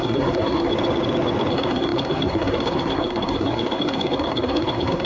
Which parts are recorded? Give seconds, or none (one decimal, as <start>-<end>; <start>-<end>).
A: 0.7-1.5